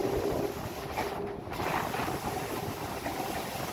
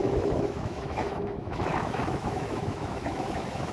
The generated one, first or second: second